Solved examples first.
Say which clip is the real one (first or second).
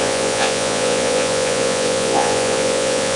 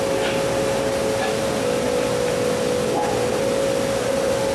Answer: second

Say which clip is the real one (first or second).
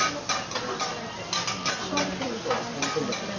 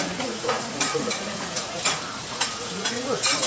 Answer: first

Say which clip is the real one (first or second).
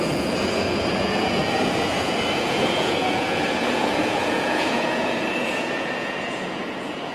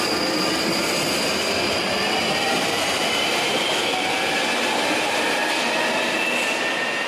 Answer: second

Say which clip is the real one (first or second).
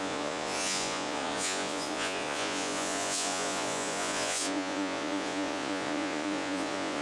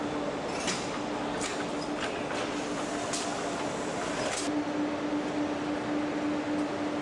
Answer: second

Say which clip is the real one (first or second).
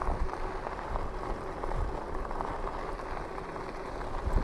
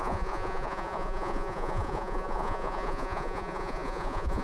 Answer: first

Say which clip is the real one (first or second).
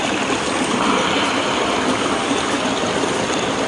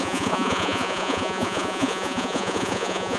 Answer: first